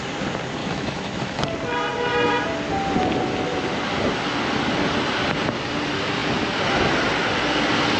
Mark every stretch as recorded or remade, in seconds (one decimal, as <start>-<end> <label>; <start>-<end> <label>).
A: 0.0-0.6 recorded; 0.6-1.4 remade; 1.4-8.0 recorded